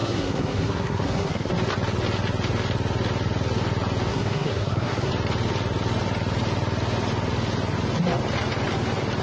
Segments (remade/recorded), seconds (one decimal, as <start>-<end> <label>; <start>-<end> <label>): 0.0-1.5 remade; 1.5-4.1 recorded; 4.1-5.1 remade; 5.1-9.2 recorded